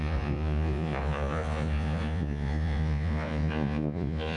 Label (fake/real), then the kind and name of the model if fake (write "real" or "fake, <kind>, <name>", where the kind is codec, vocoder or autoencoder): fake, vocoder, Vocos